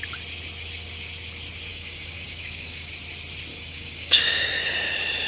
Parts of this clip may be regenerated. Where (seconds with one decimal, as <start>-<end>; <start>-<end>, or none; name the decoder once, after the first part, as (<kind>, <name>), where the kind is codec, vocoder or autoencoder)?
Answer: 1.7-2.9 (codec, DAC); 3.5-4.5